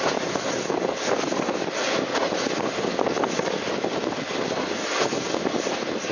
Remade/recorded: recorded